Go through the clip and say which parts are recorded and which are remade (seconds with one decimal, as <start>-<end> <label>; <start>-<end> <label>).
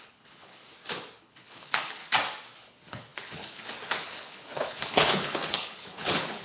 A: 0.0-0.6 remade; 0.6-1.2 recorded; 1.2-2.0 remade; 2.0-2.6 recorded; 2.6-6.4 remade